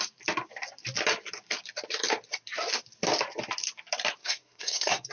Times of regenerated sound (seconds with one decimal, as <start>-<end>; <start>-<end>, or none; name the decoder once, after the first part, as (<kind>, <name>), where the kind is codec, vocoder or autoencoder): 4.2-5.1 (codec, SNAC)